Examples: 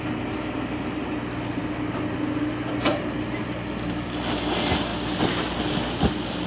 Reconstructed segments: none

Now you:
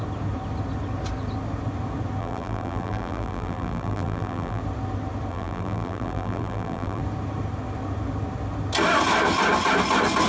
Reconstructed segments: 2.2-4.6 (vocoder, BigVGAN v2); 5.3-7.0